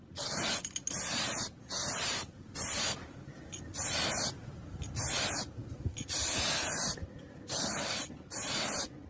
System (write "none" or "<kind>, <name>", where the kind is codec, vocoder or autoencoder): none